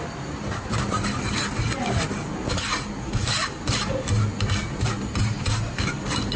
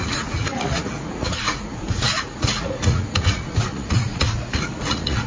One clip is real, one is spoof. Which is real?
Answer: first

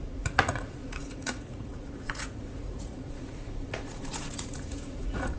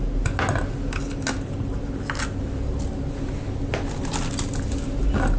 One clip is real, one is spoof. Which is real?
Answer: second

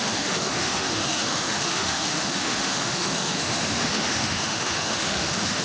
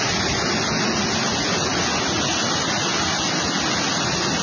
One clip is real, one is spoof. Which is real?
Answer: second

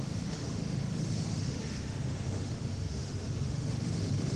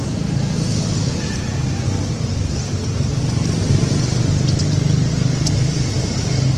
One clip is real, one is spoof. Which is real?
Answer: second